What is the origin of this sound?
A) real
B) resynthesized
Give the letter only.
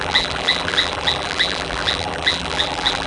B